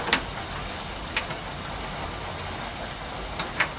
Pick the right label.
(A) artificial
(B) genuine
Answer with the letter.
B